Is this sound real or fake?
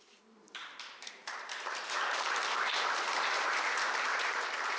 fake